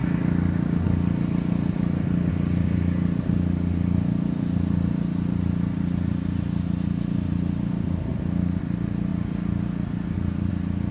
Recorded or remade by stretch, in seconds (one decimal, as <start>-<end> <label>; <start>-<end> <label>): 0.0-10.9 recorded